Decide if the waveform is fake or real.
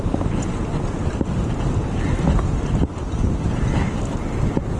real